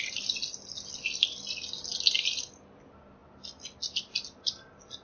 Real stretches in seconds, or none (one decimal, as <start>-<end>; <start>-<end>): 0.0-5.0